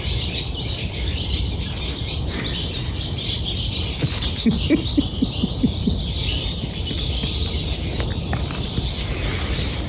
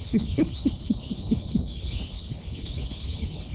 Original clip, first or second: first